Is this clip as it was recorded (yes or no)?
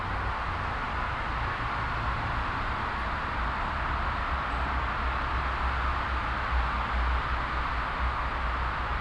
yes